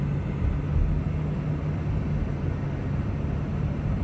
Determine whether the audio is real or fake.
real